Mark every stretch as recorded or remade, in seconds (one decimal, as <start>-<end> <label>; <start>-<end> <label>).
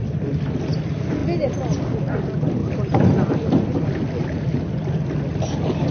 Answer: 0.0-0.7 remade; 0.7-2.6 recorded; 2.6-3.9 remade; 3.9-5.9 recorded